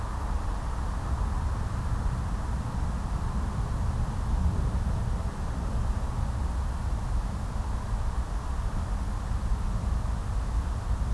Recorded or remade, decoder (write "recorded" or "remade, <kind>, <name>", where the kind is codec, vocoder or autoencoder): recorded